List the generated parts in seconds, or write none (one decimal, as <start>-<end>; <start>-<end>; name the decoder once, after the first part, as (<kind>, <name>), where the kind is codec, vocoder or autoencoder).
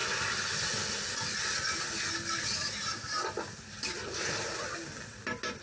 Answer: none